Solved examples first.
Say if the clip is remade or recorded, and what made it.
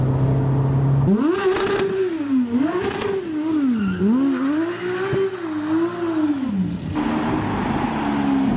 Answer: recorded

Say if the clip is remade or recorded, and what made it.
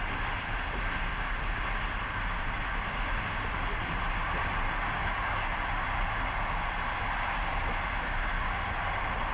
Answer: recorded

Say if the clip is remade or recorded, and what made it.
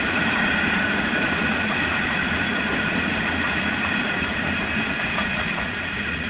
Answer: remade, vocoder, Vocos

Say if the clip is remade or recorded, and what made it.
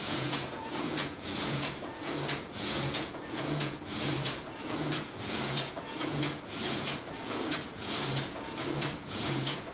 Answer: remade, vocoder, Vocos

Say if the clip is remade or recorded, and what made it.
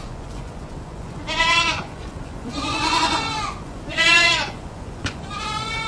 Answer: remade, vocoder, Vocos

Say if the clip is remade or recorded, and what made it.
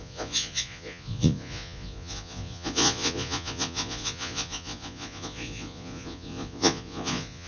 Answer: remade, vocoder, Vocos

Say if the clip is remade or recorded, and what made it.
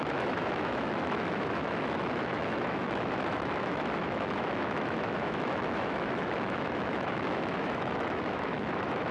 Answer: remade, autoencoder, DAC-VAE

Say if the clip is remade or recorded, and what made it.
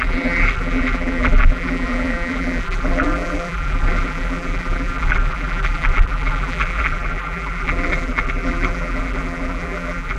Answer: remade, vocoder, BigVGAN v2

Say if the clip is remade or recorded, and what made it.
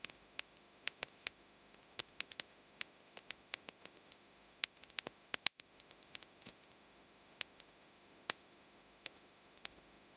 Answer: remade, autoencoder, DAC-VAE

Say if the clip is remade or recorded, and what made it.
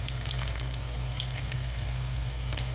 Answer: remade, codec, SNAC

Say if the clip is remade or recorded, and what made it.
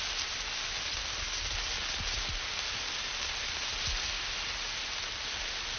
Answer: recorded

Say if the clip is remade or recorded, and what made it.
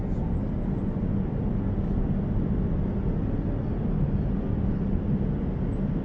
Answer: recorded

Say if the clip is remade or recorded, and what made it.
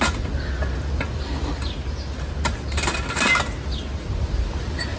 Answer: recorded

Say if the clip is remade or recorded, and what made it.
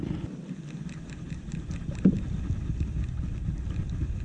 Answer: recorded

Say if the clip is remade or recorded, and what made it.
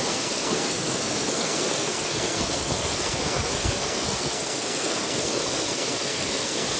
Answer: remade, codec, SNAC